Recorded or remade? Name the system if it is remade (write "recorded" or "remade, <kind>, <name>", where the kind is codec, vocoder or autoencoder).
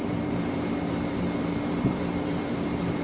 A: remade, vocoder, BigVGAN v2